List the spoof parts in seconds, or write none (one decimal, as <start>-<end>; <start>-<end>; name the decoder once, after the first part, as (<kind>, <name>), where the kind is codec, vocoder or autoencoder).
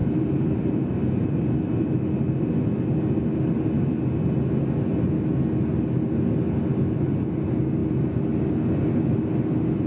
0.0-1.0 (vocoder, BigVGAN v2)